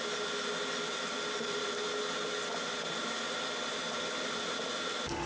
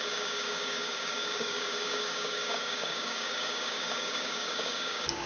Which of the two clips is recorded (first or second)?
first